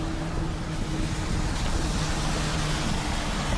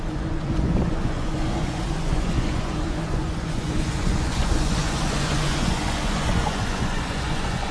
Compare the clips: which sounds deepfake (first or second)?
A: second